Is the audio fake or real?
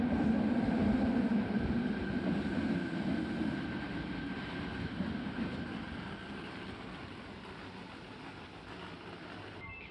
real